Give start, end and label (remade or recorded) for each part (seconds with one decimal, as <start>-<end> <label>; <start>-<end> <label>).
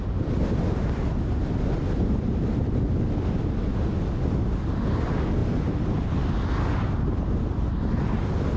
0.0-8.6 recorded